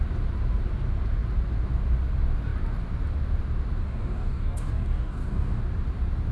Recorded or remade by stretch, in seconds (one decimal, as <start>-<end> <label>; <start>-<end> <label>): 0.0-3.8 recorded; 3.8-5.6 remade; 5.6-6.3 recorded